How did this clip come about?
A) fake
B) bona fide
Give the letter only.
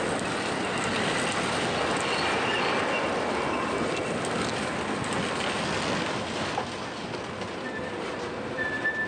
B